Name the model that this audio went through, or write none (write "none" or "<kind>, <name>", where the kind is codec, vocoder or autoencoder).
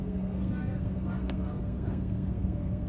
codec, SNAC